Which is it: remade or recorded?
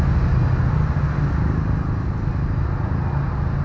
recorded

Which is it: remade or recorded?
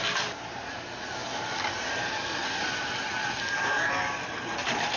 recorded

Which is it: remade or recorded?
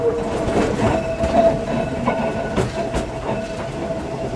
recorded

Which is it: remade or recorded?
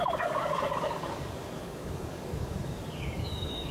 remade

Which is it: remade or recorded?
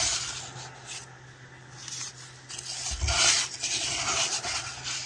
recorded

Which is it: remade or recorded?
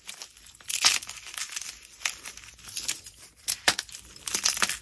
recorded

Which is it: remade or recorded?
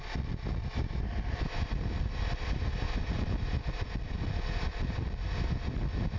recorded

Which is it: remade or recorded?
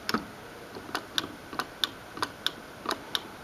recorded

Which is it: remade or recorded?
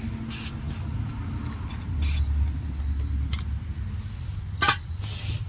recorded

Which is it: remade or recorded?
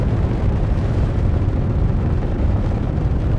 remade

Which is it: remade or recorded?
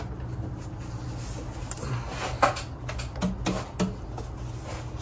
recorded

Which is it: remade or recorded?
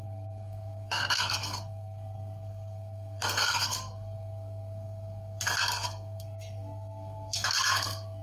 remade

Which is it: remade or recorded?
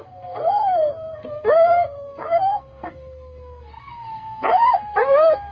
remade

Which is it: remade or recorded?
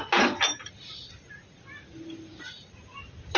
recorded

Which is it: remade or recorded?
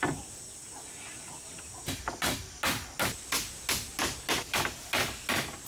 recorded